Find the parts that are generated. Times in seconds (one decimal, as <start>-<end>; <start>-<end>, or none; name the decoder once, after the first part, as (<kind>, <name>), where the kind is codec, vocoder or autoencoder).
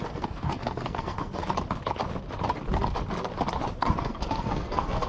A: 0.0-1.4 (codec, SNAC); 3.8-5.1